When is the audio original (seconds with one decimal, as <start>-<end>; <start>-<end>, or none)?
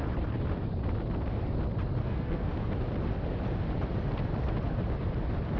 0.0-2.0; 2.5-5.6